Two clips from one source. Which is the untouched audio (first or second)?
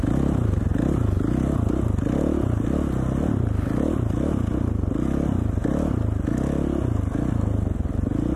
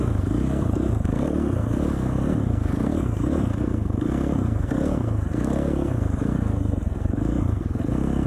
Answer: first